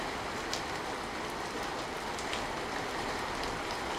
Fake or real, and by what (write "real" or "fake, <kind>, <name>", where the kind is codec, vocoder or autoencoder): real